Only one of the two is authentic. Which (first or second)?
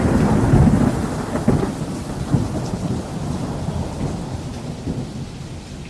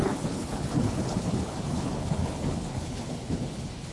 first